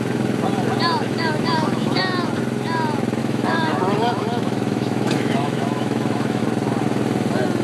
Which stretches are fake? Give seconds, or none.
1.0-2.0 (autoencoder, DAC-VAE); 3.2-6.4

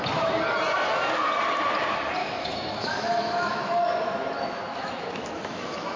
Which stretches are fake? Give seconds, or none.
2.2-6.0 (autoencoder, DAC-VAE)